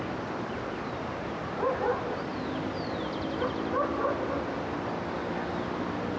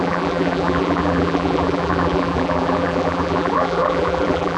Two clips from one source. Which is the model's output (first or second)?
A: second